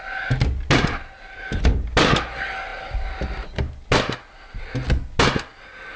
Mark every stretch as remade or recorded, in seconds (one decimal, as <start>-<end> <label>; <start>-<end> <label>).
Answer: 0.0-6.0 recorded